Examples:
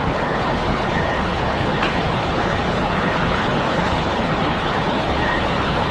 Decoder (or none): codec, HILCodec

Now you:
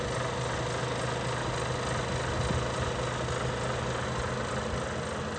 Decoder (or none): none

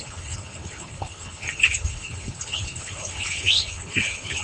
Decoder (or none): codec, HILCodec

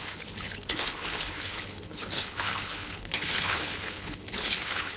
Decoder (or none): codec, HILCodec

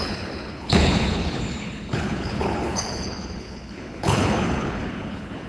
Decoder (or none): codec, HILCodec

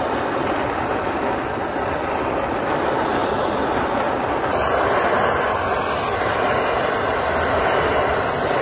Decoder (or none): none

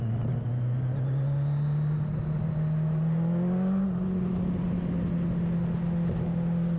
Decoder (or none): none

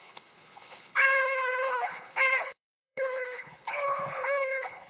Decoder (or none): codec, HILCodec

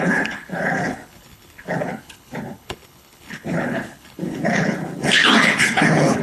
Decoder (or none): codec, HILCodec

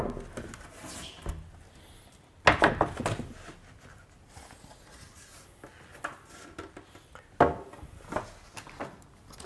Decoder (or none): none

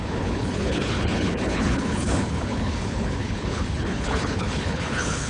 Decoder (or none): codec, HILCodec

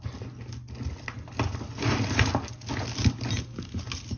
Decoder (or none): none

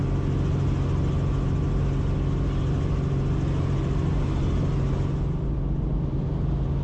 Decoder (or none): none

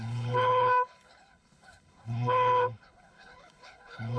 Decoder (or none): codec, HILCodec